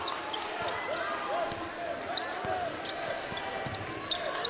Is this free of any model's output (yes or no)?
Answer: yes